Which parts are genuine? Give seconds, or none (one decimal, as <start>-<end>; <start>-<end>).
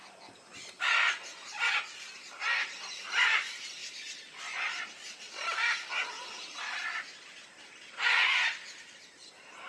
0.0-9.7